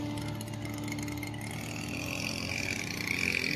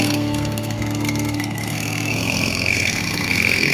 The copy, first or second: second